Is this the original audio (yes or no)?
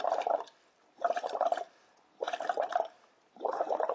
yes